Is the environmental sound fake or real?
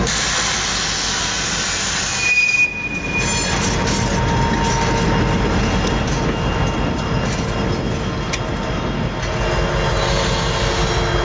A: real